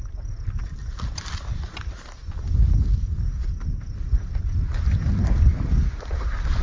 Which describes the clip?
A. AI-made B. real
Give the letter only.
B